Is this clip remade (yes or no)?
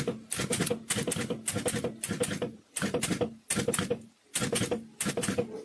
no